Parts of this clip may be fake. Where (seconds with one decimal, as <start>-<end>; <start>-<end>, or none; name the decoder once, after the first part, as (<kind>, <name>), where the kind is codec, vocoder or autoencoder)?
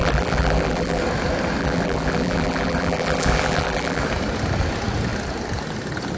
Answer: 0.0-1.0 (vocoder, BigVGAN v2); 1.6-4.0